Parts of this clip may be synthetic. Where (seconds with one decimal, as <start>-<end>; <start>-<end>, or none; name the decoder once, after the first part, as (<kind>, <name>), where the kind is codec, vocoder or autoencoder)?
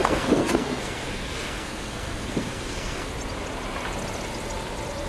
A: 0.0-3.1 (codec, SNAC)